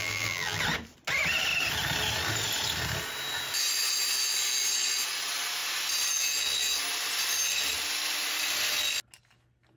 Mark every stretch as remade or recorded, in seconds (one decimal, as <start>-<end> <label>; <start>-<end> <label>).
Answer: 0.0-0.6 remade; 0.6-9.8 recorded